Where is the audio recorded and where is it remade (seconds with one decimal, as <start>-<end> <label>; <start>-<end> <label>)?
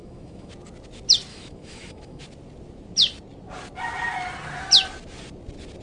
0.0-0.5 remade; 0.5-1.3 recorded; 1.3-2.2 remade; 2.2-5.8 recorded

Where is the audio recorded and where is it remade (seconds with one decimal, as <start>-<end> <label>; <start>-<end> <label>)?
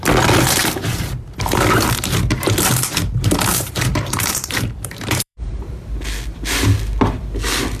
0.0-0.6 recorded; 0.6-2.6 remade; 2.6-3.5 recorded; 3.5-5.5 remade; 5.5-7.8 recorded